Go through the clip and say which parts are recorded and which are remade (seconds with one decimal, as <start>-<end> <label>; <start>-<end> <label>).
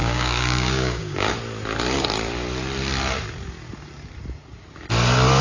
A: 0.0-1.3 remade; 1.3-5.4 recorded